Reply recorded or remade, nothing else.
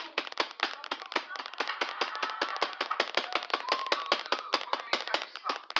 recorded